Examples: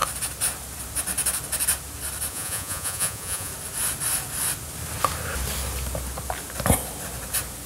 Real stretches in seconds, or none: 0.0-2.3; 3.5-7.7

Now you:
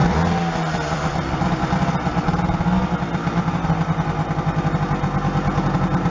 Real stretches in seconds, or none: 0.0-6.1

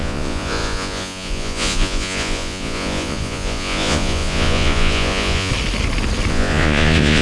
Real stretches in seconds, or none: 5.5-6.3